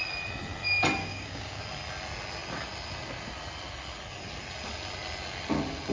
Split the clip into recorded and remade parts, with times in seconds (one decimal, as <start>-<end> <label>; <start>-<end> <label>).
0.0-1.0 recorded; 1.0-1.6 remade; 1.6-5.9 recorded